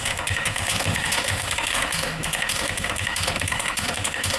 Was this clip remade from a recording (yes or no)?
yes